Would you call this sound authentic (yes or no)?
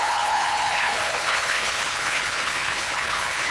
no